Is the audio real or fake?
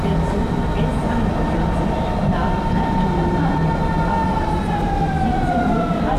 real